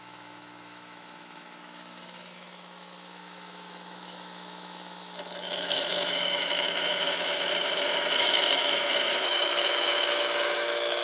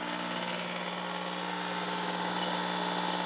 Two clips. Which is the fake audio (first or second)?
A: first